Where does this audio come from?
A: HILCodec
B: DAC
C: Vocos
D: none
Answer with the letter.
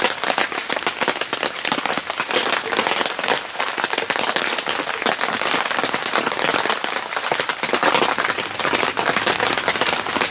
D